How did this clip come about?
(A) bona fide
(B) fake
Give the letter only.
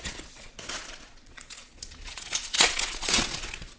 B